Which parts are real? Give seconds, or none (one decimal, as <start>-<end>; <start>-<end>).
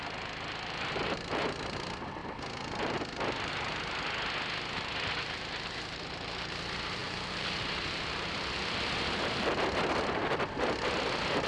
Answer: 0.0-11.5